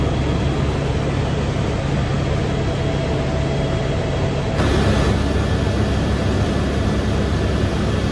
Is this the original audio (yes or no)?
yes